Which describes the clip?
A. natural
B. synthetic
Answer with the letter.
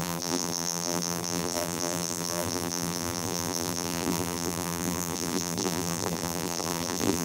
B